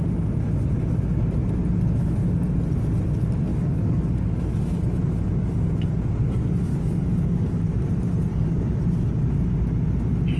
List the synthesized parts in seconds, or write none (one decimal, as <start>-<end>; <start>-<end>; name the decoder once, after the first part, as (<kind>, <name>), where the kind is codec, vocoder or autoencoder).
3.5-4.4 (codec, DAC); 6.7-7.6; 8.3-8.8